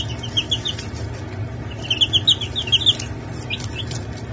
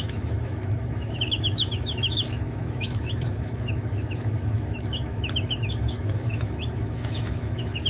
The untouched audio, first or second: first